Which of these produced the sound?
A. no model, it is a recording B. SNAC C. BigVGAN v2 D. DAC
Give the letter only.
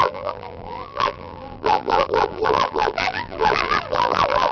C